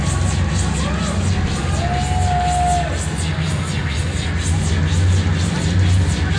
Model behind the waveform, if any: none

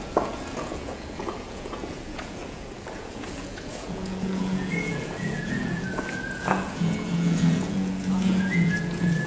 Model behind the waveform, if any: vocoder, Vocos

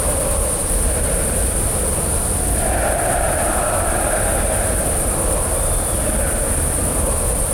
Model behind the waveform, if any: none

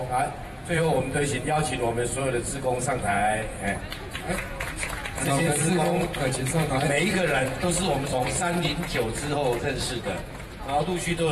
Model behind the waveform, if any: vocoder, Vocos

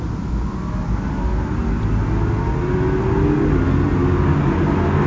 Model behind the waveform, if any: none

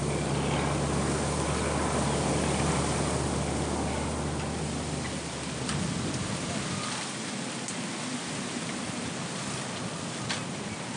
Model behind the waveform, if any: none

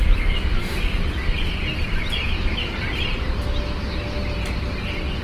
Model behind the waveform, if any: none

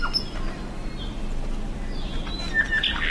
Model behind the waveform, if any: none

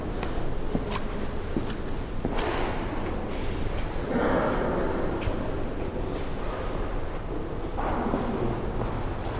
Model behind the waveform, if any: none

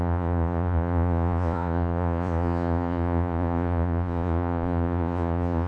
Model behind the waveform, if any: vocoder, Vocos